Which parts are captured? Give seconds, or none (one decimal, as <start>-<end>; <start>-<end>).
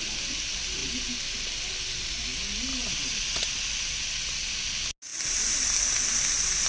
0.0-2.7; 4.5-6.7